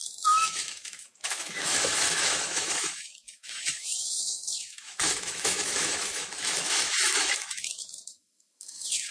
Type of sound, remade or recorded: remade